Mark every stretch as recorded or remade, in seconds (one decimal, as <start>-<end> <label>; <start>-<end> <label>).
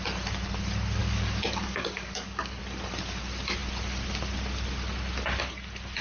0.0-1.0 recorded; 1.0-2.6 remade; 2.6-6.0 recorded